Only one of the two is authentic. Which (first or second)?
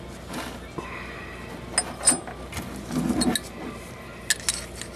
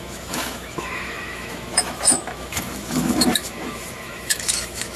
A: first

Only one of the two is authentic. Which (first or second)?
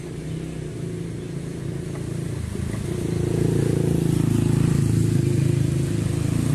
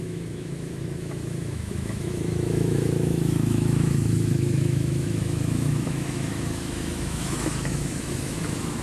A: first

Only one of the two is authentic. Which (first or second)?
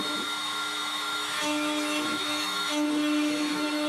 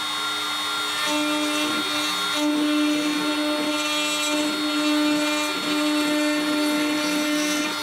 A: second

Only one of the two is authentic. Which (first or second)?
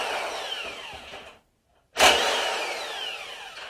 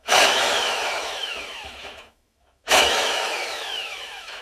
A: first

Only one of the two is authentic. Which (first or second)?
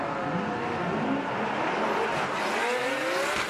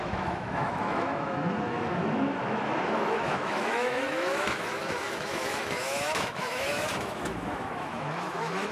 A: first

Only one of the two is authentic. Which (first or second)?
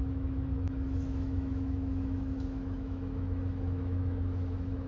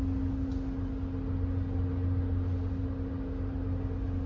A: second